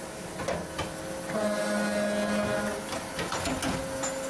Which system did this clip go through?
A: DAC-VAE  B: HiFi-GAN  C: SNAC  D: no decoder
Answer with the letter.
D